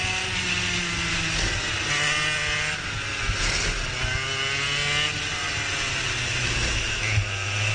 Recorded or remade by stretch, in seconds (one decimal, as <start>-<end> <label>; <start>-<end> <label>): 0.0-7.7 recorded

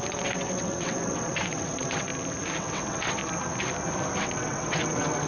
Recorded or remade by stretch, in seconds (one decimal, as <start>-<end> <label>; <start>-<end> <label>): 0.0-2.1 remade; 2.1-2.6 recorded; 2.6-3.2 remade; 3.2-4.2 recorded; 4.2-5.3 remade